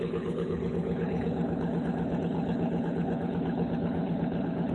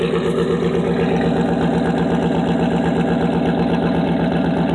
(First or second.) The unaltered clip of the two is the second